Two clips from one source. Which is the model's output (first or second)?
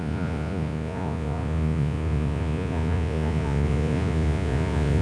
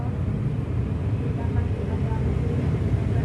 first